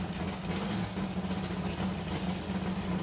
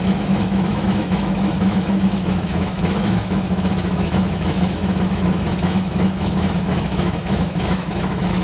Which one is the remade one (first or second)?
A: second